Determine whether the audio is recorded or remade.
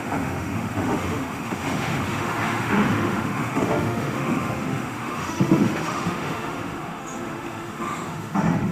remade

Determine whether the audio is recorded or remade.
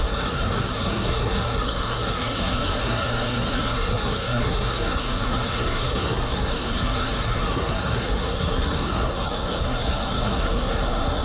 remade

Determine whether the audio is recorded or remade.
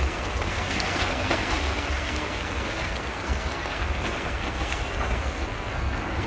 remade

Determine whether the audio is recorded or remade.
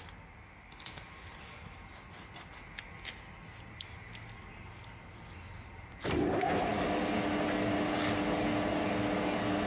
recorded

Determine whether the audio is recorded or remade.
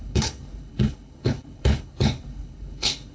remade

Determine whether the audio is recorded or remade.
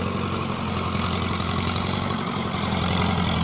recorded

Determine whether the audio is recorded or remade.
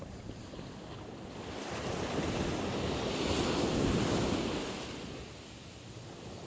recorded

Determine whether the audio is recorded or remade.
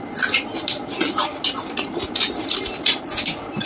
recorded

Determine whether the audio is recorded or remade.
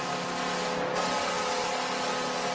recorded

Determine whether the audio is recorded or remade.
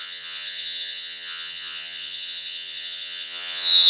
remade